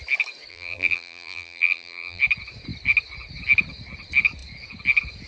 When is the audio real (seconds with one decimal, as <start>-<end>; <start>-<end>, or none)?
0.0-0.5; 2.2-5.3

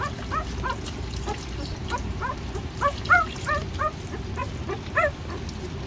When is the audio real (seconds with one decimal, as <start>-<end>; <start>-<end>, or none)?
0.0-1.8; 3.5-5.9

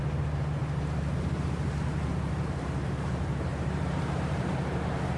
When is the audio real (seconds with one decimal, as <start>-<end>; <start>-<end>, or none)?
none

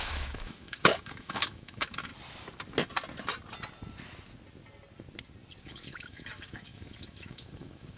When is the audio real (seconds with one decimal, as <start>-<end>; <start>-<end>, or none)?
2.1-5.6

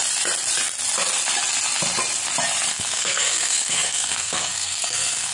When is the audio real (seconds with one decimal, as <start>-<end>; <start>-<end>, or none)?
0.0-2.7

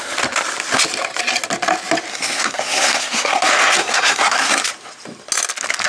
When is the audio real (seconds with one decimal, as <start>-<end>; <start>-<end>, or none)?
0.0-2.1; 3.4-3.8; 4.7-5.9